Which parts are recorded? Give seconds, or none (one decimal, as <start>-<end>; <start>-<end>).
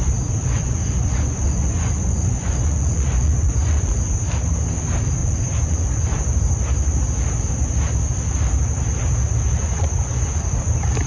0.0-0.4; 3.9-5.2; 6.0-9.6; 10.4-11.1